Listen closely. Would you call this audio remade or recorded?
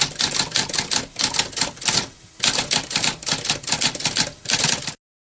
recorded